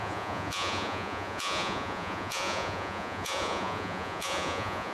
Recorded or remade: remade